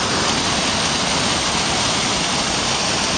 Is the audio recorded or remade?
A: recorded